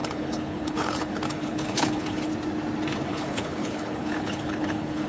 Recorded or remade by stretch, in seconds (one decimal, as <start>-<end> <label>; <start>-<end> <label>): 0.0-2.3 remade; 2.3-3.1 recorded; 3.1-5.1 remade